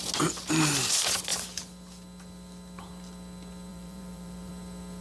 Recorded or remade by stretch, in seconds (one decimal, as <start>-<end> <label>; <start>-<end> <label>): 0.0-3.7 recorded; 3.7-4.5 remade; 4.5-5.0 recorded